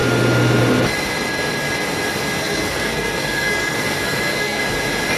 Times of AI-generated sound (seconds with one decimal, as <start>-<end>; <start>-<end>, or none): 2.4-4.6